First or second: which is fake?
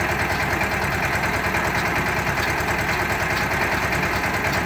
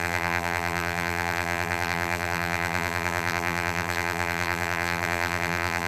second